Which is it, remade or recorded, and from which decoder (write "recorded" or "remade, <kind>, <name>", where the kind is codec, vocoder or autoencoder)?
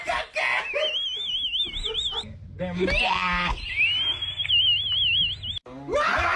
recorded